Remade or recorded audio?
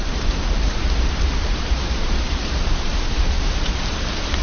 remade